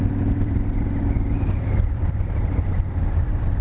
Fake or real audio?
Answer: fake